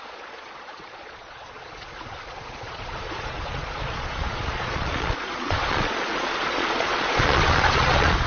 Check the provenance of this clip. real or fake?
fake